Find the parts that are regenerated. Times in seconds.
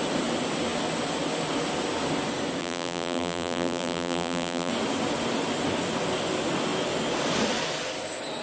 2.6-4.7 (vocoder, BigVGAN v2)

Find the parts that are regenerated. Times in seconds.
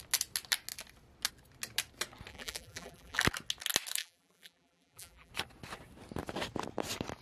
2.3-3.2 (vocoder, BigVGAN v2); 4.0-5.3